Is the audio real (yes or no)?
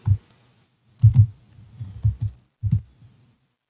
yes